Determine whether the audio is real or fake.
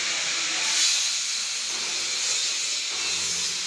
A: real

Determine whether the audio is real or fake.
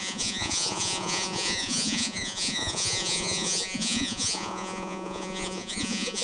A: fake